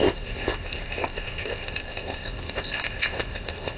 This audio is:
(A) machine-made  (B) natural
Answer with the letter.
A